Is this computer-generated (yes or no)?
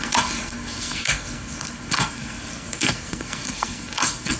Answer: yes